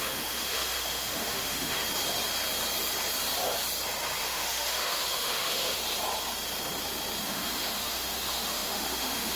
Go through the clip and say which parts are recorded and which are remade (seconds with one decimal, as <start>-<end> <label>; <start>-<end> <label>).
0.0-1.8 remade; 1.8-4.2 recorded; 4.2-5.8 remade; 5.8-7.2 recorded; 7.2-9.4 remade